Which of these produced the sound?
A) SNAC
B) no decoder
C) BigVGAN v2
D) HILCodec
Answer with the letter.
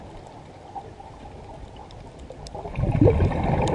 B